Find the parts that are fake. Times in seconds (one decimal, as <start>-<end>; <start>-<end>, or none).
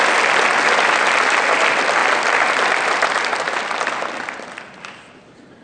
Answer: none